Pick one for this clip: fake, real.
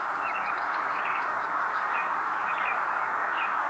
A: fake